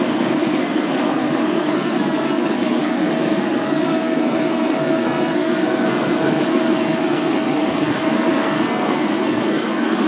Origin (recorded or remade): remade